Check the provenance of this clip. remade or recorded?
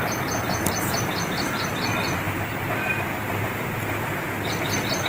recorded